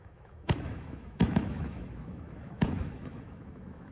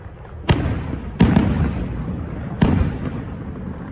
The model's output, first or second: first